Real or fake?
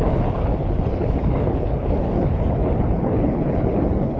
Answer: fake